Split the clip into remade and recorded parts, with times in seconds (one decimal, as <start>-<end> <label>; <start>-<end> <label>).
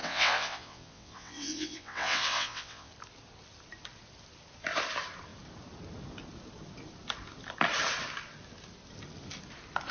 0.0-2.9 remade; 2.9-9.9 recorded